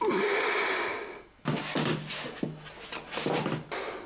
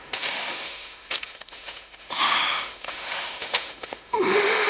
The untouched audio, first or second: first